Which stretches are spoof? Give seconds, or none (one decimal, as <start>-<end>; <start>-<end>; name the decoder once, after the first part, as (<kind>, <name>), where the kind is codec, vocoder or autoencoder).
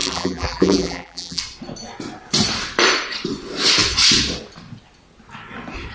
0.0-1.4 (vocoder, BigVGAN v2)